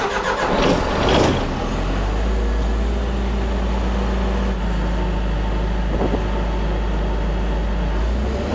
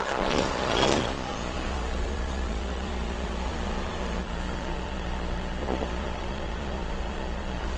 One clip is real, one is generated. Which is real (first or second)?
first